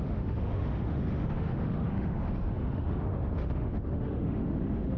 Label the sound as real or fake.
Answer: fake